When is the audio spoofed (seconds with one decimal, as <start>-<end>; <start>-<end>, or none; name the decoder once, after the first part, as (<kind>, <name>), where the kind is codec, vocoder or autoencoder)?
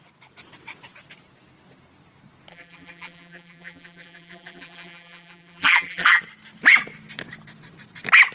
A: 2.5-6.2 (vocoder, BigVGAN v2)